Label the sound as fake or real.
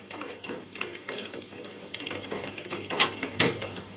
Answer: fake